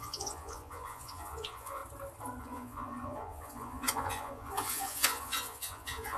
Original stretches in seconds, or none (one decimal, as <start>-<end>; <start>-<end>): 1.8-2.4